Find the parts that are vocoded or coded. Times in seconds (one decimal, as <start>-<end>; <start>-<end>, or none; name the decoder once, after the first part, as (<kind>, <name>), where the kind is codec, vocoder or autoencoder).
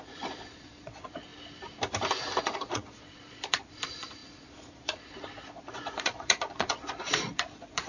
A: 0.0-1.3 (vocoder, Vocos); 2.4-7.9